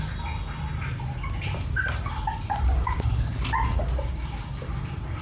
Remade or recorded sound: recorded